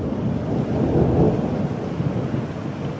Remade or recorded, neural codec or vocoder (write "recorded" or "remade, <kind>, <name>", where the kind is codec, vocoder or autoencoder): recorded